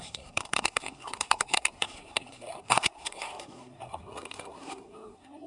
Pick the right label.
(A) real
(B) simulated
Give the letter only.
B